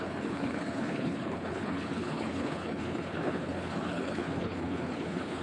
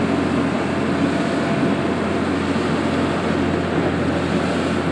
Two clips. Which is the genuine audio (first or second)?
second